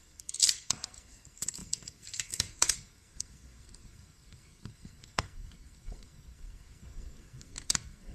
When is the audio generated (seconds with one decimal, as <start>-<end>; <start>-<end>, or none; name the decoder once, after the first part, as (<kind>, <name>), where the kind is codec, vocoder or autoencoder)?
0.0-8.1 (codec, SNAC)